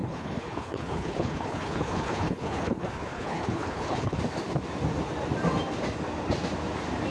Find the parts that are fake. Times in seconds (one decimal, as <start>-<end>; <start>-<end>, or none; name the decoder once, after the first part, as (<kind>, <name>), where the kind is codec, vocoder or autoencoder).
0.0-4.2 (codec, HILCodec)